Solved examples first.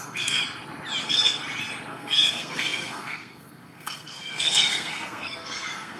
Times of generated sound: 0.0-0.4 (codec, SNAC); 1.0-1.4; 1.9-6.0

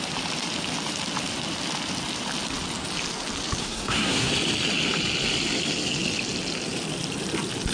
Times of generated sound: 3.6-4.3 (codec, SNAC)

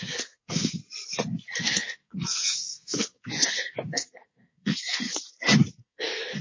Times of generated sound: 0.0-0.8 (codec, SNAC); 1.6-5.1; 5.7-6.4

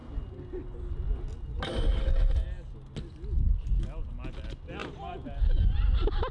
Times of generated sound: none

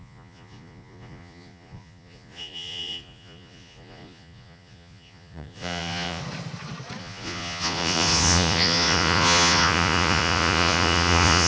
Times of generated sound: 0.0-6.2 (vocoder, Vocos); 7.0-11.5

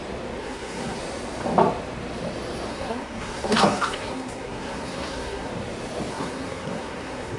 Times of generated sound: 0.4-1.0 (codec, SNAC); 2.7-5.5; 6.1-7.4

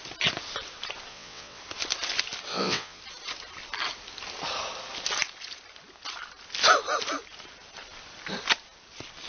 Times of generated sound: 1.1-1.6 (vocoder, WaveNeXt); 2.5-3.0

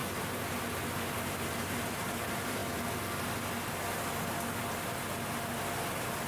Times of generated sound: 0.0-2.6 (vocoder, BigVGAN v2)